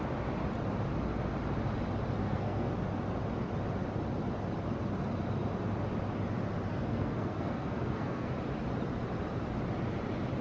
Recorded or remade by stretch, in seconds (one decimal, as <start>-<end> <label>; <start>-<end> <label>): 0.0-2.2 recorded; 2.2-2.7 remade; 2.7-6.7 recorded; 6.7-8.3 remade; 8.3-10.4 recorded